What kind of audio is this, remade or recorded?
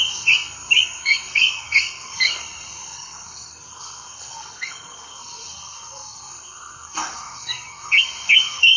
remade